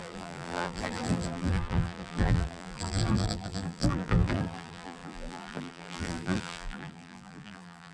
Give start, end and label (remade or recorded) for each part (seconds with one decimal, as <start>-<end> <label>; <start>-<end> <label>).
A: 0.0-7.9 remade